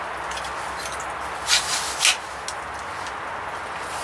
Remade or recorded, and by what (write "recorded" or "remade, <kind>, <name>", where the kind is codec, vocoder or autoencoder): recorded